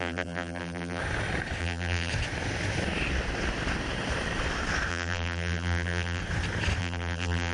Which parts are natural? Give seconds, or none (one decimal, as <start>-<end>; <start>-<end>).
1.0-1.6; 2.1-4.9; 6.2-6.8